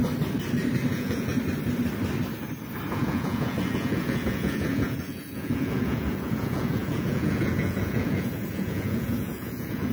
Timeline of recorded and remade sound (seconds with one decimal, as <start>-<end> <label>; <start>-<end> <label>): 0.0-0.9 recorded; 0.9-1.3 remade; 1.3-2.9 recorded; 2.9-9.9 remade